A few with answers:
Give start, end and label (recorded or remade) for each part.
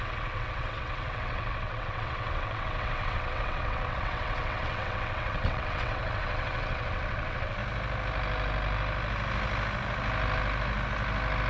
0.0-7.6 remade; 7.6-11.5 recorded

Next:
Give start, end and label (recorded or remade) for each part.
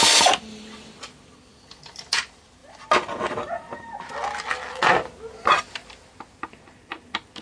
0.0-7.4 recorded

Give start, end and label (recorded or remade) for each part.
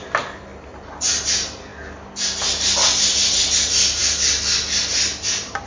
0.0-5.7 recorded